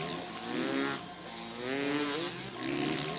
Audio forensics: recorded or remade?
recorded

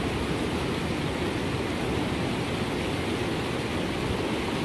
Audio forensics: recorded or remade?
recorded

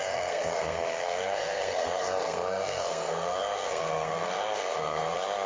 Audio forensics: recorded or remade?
remade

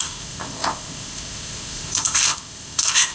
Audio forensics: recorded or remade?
remade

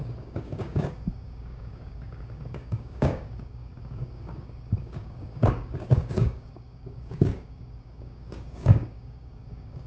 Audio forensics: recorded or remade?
remade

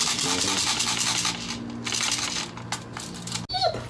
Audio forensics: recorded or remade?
recorded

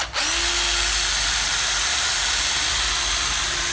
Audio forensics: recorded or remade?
recorded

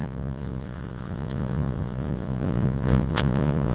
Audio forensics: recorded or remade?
remade